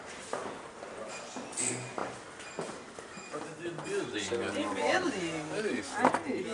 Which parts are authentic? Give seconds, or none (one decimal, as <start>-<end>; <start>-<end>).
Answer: 0.0-6.5